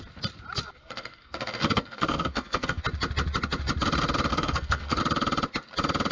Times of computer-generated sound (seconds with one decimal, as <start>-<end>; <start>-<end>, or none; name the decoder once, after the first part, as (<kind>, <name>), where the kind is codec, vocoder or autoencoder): 0.8-2.8 (codec, SNAC); 4.3-5.0